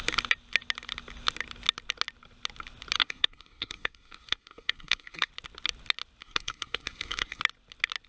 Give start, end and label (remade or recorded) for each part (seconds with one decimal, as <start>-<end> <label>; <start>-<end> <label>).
0.0-3.0 recorded; 3.0-5.3 remade; 5.3-6.2 recorded; 6.2-7.4 remade; 7.4-8.1 recorded